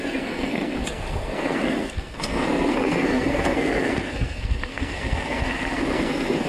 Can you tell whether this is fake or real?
fake